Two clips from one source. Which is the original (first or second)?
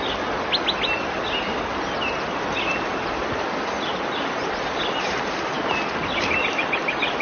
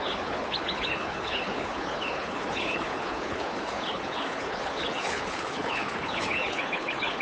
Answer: first